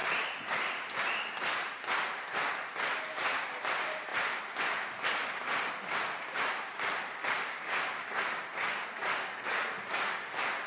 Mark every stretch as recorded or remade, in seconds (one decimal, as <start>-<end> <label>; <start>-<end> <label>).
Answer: 0.0-4.1 remade; 4.1-5.7 recorded; 5.7-10.7 remade